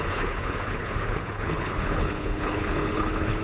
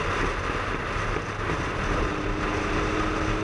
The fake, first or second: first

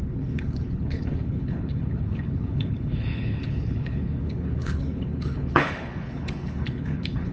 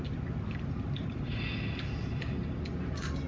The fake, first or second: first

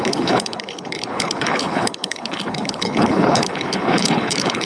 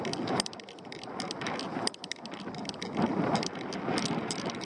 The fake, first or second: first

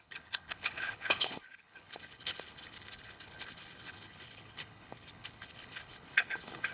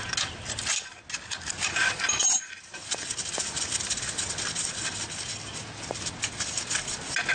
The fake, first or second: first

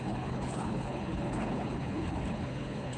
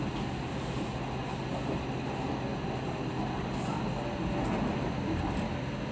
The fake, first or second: first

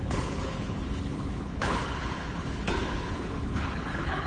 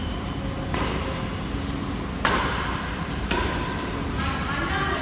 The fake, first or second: first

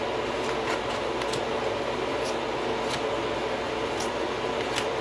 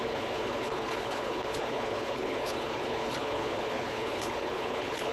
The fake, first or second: second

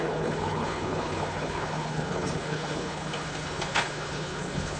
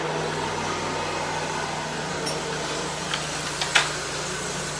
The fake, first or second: first